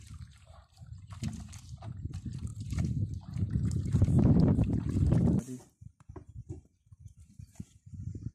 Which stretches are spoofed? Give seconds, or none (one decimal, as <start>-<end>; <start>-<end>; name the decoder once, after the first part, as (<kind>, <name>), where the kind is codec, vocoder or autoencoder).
0.0-8.3 (vocoder, BigVGAN v2)